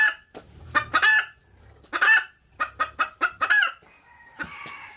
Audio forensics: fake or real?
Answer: real